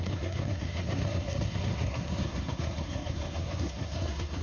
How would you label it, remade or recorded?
remade